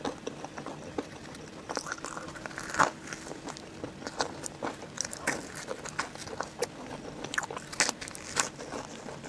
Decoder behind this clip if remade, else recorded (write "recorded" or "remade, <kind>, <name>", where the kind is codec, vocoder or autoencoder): recorded